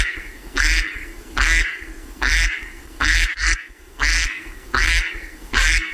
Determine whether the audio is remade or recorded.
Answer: remade